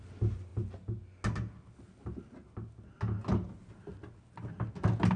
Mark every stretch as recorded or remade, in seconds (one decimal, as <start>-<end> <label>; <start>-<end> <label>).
0.0-5.2 recorded